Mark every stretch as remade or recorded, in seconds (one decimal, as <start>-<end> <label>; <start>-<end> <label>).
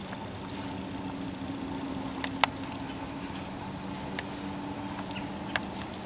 0.0-6.1 recorded